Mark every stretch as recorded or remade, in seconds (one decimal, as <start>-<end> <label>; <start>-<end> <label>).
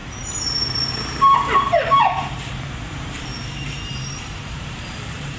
0.0-0.7 recorded; 0.7-5.4 remade